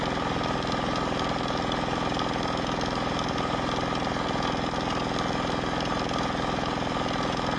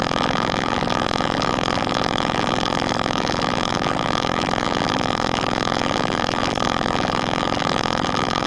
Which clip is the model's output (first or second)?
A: second